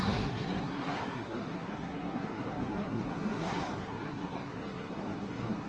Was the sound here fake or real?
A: fake